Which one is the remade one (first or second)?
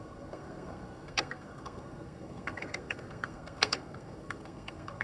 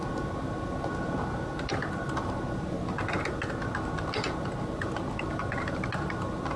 first